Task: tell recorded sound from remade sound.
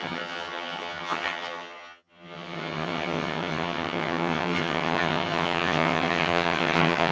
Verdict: remade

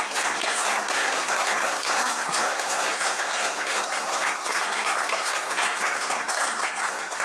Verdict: remade